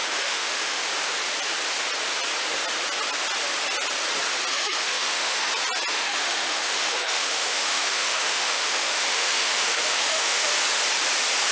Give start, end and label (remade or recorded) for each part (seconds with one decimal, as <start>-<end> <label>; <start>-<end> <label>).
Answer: 0.0-0.9 remade; 0.9-4.5 recorded; 4.5-5.5 remade; 5.5-5.9 recorded; 5.9-10.5 remade; 10.5-11.5 recorded